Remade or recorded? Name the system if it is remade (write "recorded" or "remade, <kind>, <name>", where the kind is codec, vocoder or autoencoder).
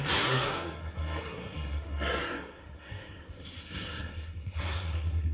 remade, codec, SNAC